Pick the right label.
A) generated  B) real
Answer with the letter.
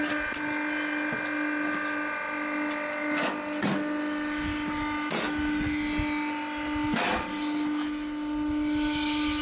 B